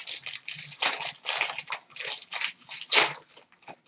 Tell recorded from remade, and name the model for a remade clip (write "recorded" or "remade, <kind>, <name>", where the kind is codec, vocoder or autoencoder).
recorded